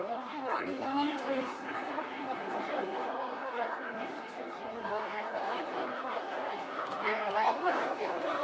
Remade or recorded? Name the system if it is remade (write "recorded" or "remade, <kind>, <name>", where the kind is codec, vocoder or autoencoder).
remade, codec, SNAC